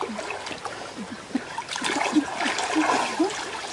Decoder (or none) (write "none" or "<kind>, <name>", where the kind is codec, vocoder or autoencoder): none